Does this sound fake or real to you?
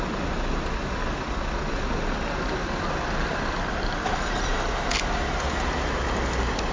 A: real